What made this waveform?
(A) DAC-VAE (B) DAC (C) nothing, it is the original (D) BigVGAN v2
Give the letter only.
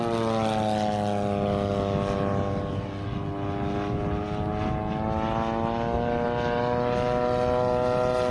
C